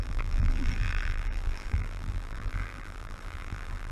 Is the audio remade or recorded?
remade